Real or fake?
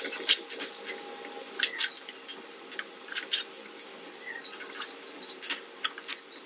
real